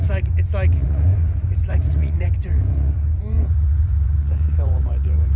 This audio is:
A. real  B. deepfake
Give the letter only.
B